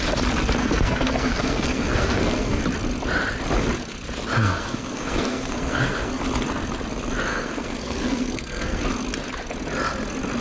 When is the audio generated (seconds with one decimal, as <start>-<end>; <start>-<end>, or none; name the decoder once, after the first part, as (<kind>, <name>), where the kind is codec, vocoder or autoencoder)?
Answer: 0.6-2.6 (codec, SNAC); 4.4-6.2; 7.3-8.8